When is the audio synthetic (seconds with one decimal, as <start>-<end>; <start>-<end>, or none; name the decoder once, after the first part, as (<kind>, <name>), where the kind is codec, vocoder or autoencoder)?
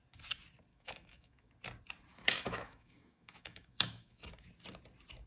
0.7-1.5 (autoencoder, DAC-VAE); 2.1-4.3